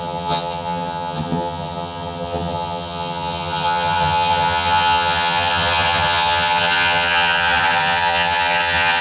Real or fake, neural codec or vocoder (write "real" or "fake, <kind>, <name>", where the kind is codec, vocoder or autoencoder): fake, vocoder, HiFi-GAN